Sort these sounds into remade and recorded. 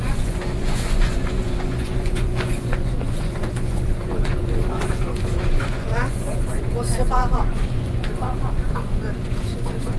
remade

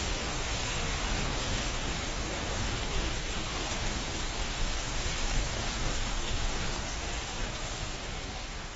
remade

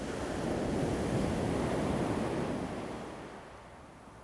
recorded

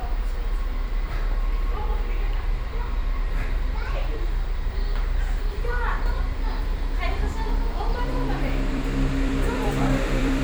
remade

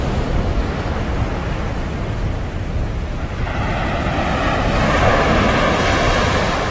recorded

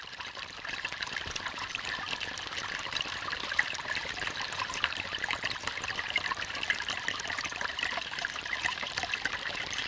remade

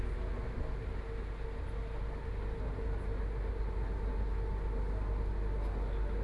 recorded